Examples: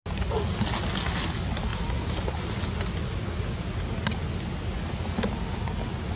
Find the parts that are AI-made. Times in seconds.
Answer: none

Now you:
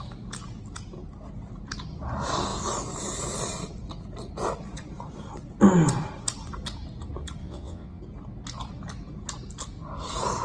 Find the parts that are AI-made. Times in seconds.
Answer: 7.4-8.0

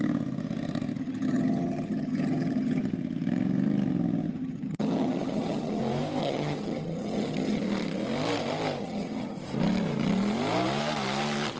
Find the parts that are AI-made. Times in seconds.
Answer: 1.0-2.8; 4.3-5.8; 6.2-7.6; 8.8-9.4